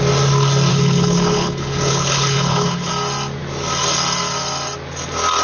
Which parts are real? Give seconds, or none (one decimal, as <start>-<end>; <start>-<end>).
0.0-0.7; 2.9-5.4